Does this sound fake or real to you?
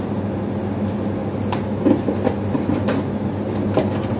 real